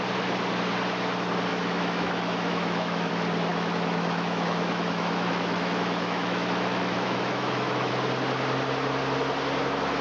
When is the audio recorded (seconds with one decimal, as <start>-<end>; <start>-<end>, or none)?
0.0-1.5; 3.1-3.5; 7.9-10.0